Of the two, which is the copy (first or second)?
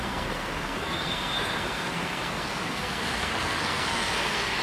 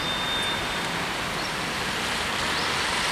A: first